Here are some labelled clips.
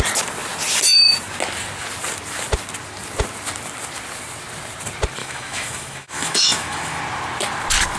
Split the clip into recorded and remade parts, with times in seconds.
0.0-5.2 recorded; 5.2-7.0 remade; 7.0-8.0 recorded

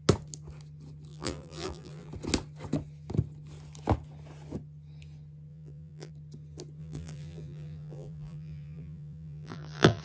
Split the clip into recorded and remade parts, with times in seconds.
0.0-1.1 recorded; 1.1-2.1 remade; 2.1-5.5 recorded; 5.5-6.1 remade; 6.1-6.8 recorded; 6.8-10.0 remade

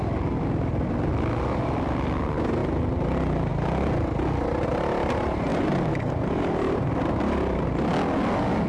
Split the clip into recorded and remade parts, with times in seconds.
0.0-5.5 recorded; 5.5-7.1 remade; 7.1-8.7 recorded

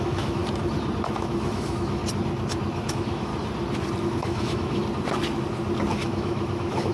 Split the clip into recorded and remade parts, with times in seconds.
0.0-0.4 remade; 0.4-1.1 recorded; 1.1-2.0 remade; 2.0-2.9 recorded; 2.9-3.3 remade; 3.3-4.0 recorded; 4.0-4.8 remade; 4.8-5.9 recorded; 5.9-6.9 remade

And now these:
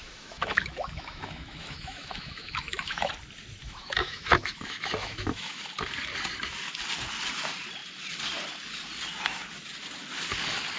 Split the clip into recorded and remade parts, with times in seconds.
0.0-3.1 remade; 3.1-3.6 recorded; 3.6-5.6 remade; 5.6-10.8 recorded